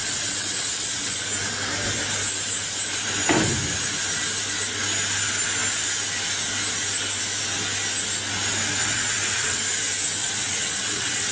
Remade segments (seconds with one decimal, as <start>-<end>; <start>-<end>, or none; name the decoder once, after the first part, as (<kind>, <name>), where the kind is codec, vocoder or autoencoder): 0.0-1.2 (vocoder, WaveNeXt); 8.8-9.6; 10.2-11.3